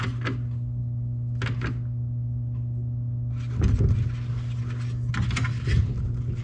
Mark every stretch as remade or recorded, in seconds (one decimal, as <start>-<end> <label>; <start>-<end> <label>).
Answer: 0.0-6.4 recorded